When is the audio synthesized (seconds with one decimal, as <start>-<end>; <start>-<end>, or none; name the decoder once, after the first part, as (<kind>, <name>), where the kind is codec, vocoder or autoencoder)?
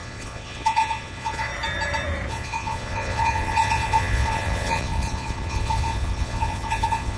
0.0-1.5 (vocoder, Vocos); 2.3-7.2